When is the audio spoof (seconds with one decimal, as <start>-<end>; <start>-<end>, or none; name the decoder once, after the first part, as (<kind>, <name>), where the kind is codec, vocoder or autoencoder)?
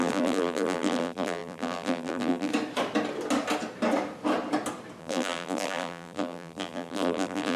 0.0-2.5 (vocoder, BigVGAN v2); 5.0-7.6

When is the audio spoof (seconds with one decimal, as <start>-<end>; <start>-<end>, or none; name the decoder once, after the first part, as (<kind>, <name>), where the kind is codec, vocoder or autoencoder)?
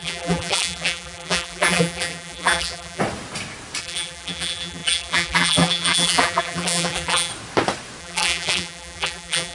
0.0-3.0 (vocoder, BigVGAN v2); 3.8-7.3; 8.0-9.5